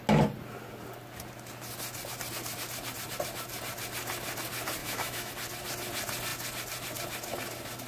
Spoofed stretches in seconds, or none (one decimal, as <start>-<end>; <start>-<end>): 4.8-5.3